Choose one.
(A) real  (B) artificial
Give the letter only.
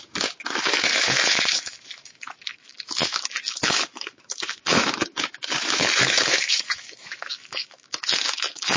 B